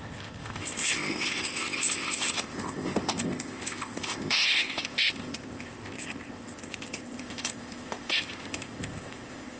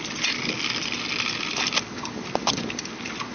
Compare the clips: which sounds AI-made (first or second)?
first